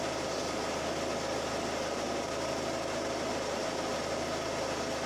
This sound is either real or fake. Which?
real